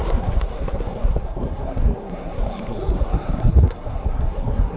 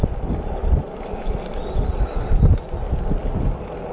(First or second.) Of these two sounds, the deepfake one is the first